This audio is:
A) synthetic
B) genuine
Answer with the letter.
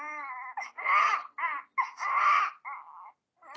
B